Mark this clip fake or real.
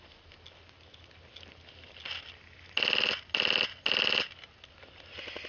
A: real